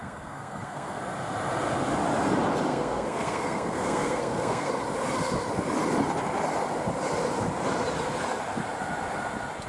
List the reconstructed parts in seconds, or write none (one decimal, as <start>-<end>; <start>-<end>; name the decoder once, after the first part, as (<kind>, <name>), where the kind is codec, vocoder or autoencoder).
0.0-1.0 (codec, SNAC); 2.7-4.7